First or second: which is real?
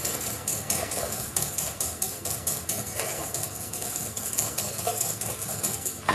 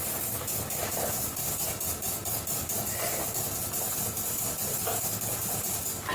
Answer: second